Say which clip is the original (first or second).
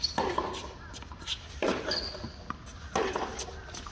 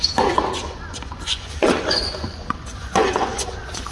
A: first